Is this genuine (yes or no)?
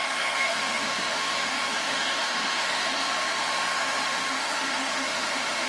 no